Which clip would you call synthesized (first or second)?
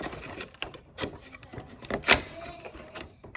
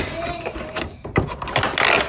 first